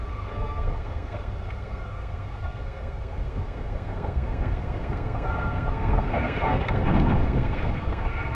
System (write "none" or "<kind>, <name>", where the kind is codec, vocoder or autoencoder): codec, SNAC